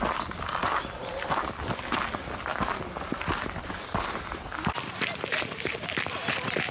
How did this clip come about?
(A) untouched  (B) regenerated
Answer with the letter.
A